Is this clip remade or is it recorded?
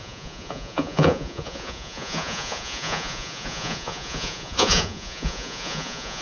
remade